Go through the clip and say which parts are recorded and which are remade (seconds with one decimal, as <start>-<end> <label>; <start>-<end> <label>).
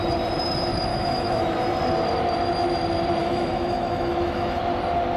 0.0-0.9 recorded; 0.9-1.8 remade; 1.8-3.2 recorded; 3.2-4.6 remade; 4.6-5.2 recorded